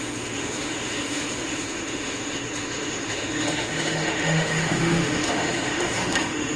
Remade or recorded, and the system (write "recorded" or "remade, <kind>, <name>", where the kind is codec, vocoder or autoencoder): remade, autoencoder, DAC-VAE